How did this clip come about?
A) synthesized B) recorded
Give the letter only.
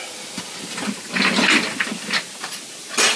B